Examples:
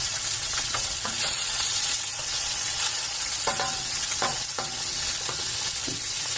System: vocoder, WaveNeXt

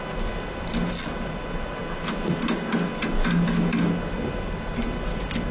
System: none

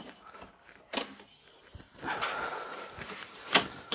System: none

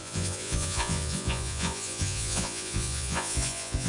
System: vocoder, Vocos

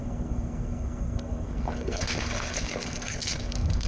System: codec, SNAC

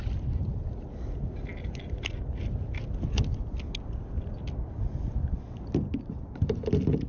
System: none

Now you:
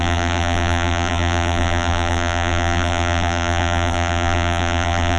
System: vocoder, BigVGAN v2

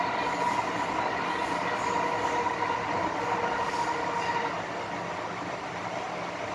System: none